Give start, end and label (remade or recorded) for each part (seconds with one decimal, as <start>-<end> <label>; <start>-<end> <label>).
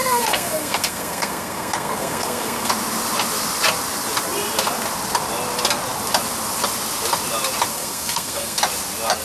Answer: 0.0-2.7 remade; 2.7-7.7 recorded; 7.7-8.6 remade; 8.6-9.2 recorded